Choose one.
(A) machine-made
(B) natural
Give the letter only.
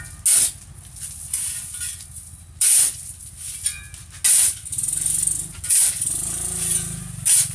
B